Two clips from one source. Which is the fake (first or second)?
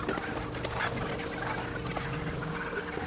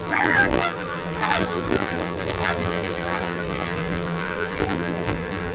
second